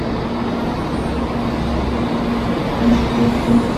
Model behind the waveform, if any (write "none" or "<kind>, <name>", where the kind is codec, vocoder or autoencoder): none